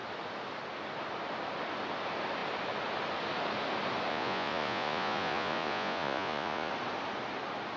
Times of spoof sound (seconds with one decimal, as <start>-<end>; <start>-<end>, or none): 4.1-6.7